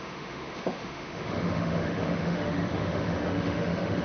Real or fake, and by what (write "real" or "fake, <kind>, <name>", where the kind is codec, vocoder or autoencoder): fake, autoencoder, DAC-VAE